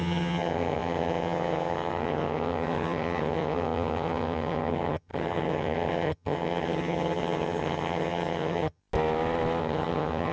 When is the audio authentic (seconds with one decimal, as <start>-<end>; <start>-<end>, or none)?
8.8-9.6